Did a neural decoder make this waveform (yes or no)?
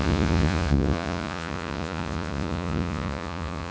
yes